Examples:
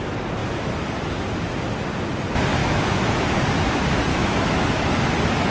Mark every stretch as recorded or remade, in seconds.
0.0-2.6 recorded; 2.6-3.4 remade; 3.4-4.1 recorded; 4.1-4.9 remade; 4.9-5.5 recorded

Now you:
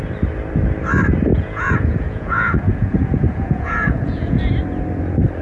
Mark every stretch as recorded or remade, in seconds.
0.0-1.3 recorded; 1.3-4.5 remade; 4.5-5.4 recorded